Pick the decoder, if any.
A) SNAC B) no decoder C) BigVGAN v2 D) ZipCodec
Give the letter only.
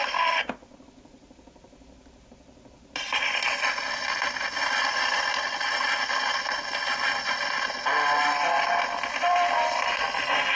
B